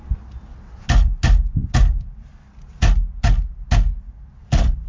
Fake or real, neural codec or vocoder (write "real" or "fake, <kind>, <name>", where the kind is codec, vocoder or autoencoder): real